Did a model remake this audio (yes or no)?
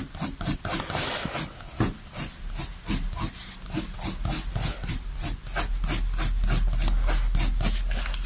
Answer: no